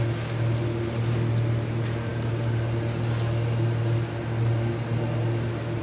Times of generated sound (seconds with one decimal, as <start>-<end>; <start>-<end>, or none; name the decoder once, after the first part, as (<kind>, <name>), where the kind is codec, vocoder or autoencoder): none